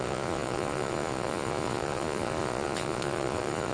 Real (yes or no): no